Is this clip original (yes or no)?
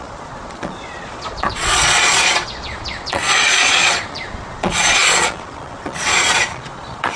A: no